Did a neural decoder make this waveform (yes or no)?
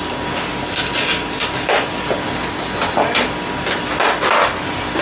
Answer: no